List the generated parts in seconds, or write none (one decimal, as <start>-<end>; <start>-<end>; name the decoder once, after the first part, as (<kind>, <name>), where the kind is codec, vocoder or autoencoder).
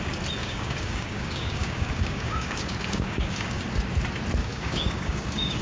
0.4-3.6 (codec, DAC); 4.4-5.6